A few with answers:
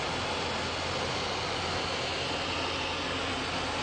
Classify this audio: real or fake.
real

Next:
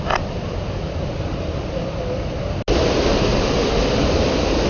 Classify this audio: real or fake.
real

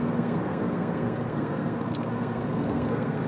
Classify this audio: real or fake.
fake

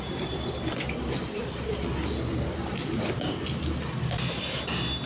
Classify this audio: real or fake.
real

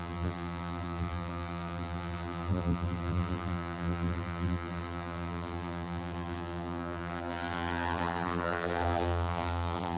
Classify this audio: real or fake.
fake